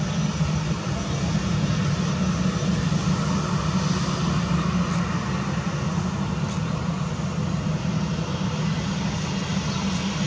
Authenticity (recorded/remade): recorded